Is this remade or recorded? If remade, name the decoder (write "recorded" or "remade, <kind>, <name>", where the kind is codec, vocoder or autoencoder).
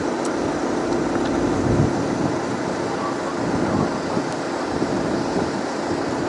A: recorded